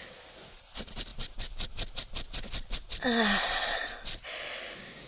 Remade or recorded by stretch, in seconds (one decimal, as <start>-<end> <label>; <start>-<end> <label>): 0.0-5.1 recorded